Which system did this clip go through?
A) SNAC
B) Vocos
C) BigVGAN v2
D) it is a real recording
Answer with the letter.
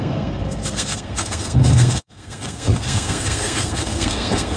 A